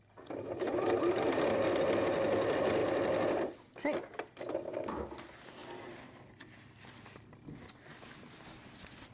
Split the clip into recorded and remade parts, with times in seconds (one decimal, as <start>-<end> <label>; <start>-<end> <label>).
0.0-9.1 recorded